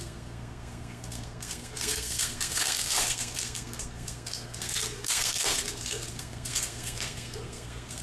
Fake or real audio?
fake